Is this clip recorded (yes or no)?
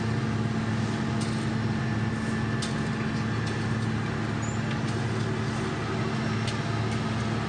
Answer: yes